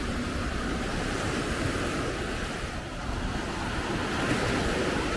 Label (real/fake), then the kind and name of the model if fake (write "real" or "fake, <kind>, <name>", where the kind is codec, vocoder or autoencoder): real